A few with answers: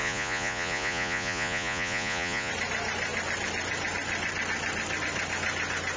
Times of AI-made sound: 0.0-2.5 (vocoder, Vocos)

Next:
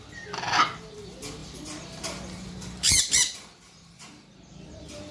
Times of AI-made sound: 1.4-4.5 (vocoder, BigVGAN v2)